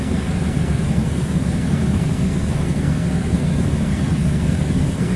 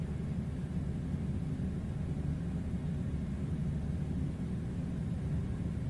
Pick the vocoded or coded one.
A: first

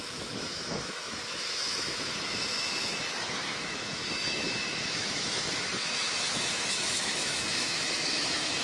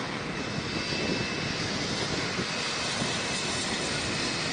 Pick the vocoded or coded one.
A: first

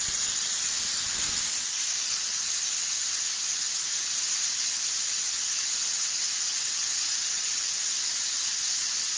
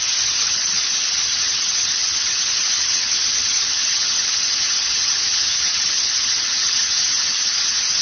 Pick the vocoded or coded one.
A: second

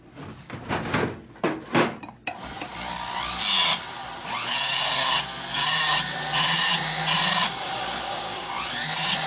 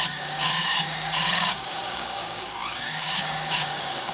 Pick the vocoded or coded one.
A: second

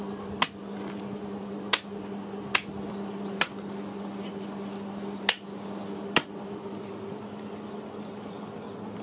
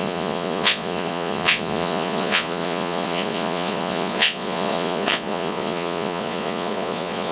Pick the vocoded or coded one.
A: second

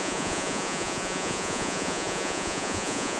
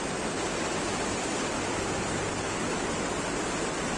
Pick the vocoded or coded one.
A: first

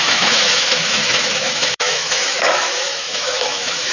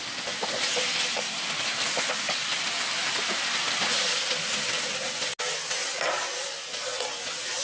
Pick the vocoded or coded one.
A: first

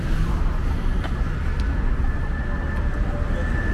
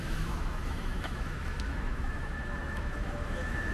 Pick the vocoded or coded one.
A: second